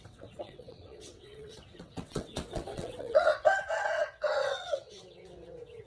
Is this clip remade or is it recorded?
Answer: remade